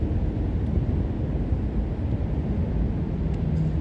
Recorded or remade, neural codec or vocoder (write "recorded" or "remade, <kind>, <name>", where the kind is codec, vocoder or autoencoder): recorded